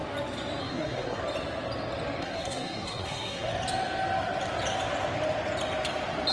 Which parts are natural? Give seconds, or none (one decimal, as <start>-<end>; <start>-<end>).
0.0-0.6; 1.2-2.2; 3.5-6.3